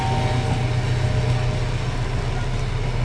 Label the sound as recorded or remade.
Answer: recorded